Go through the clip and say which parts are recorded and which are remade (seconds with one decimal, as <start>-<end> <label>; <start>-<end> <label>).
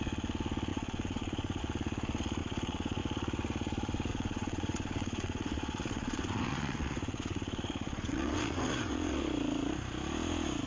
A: 0.0-0.7 recorded; 0.7-1.6 remade; 1.6-2.4 recorded; 2.4-3.0 remade; 3.0-4.1 recorded; 4.1-9.2 remade; 9.2-10.7 recorded